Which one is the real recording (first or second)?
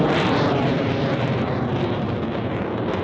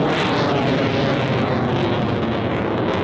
second